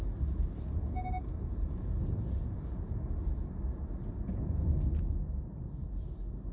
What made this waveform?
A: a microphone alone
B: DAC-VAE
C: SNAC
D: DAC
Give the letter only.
A